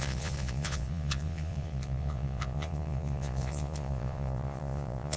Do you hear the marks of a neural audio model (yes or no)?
yes